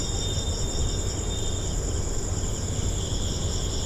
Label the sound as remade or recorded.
recorded